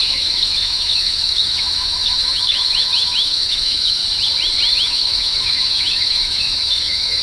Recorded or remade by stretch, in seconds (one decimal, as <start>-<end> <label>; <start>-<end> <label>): 0.0-4.0 remade; 4.0-4.7 recorded; 4.7-7.2 remade